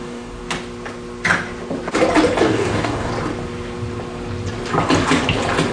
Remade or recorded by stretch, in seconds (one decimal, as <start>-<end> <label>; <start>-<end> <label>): 0.0-0.4 remade; 0.4-2.4 recorded; 2.4-3.1 remade; 3.1-5.7 recorded